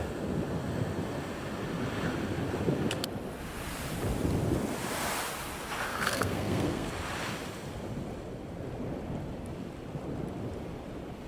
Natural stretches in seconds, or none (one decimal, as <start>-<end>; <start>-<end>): 0.0-5.9; 6.9-11.3